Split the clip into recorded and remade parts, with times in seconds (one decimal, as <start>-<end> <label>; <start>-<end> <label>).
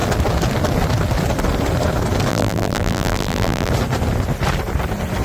0.0-2.3 recorded; 2.3-3.7 remade; 3.7-5.2 recorded